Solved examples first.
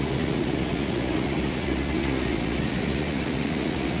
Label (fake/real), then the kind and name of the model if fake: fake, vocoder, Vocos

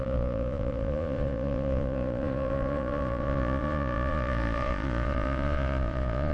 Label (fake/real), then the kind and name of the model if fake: fake, vocoder, Vocos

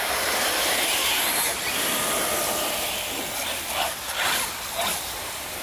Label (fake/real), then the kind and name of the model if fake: fake, vocoder, BigVGAN v2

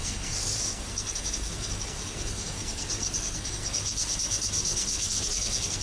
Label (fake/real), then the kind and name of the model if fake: fake, codec, SNAC